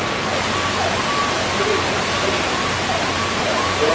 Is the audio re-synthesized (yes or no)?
no